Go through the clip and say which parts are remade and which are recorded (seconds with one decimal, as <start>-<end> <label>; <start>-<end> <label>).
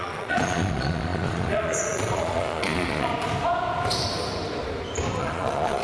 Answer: 0.0-3.1 remade; 3.1-5.2 recorded; 5.2-5.8 remade